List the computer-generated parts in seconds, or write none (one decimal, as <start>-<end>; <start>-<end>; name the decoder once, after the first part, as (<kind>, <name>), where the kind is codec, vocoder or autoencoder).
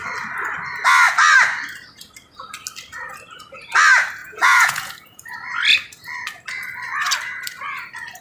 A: 4.2-4.9 (vocoder, Vocos)